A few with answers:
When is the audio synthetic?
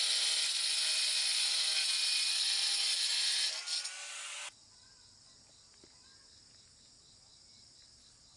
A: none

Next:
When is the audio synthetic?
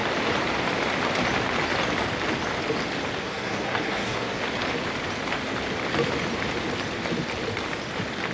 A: 3.2-4.4 (codec, SNAC)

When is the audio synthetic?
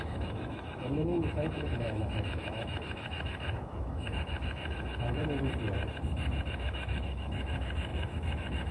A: 0.0-5.2 (autoencoder, DAC-VAE); 6.5-8.7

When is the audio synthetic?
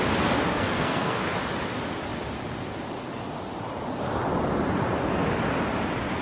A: 0.5-1.2 (codec, SNAC)